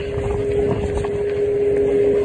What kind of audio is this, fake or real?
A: real